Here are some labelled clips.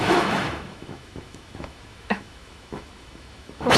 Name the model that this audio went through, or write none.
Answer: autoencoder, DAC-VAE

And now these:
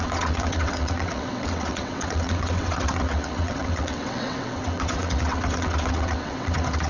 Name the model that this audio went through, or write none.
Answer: vocoder, WaveNeXt